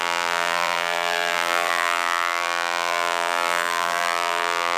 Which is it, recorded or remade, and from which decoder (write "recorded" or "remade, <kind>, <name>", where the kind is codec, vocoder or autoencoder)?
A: remade, vocoder, BigVGAN v2